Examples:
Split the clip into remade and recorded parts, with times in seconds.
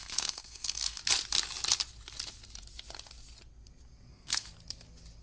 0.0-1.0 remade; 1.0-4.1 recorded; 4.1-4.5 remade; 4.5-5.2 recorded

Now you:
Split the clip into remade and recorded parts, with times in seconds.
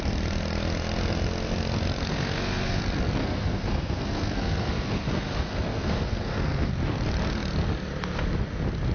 0.0-2.1 recorded; 2.1-2.8 remade; 2.8-3.2 recorded; 3.2-6.7 remade; 6.7-8.9 recorded